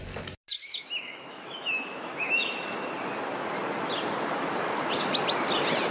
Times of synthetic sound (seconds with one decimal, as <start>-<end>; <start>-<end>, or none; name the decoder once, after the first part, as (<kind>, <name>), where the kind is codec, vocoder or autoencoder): 0.6-2.7 (autoencoder, DAC-VAE)